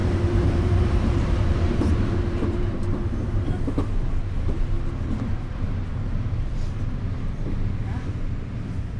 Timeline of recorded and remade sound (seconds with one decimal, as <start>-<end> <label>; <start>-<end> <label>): 0.0-3.7 remade; 3.7-9.0 recorded